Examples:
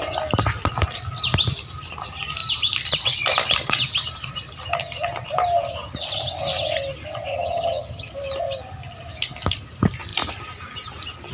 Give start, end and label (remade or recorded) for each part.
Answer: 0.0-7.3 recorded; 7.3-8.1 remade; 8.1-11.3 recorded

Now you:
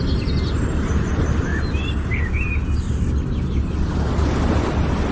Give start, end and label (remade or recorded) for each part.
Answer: 0.0-5.1 recorded